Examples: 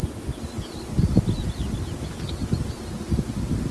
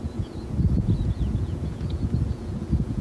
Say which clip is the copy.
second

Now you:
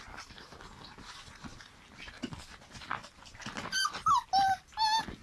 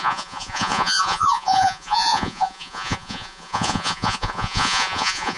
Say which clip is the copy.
second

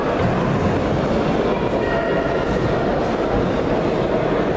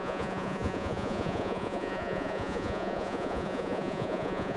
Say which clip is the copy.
second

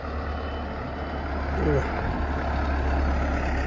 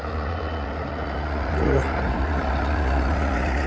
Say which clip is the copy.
second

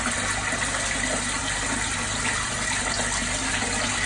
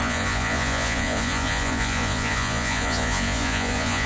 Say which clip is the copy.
second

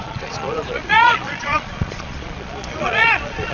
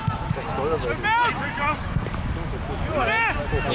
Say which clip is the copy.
first